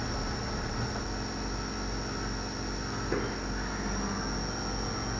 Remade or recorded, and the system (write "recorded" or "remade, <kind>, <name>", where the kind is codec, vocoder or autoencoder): recorded